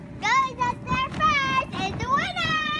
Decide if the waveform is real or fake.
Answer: real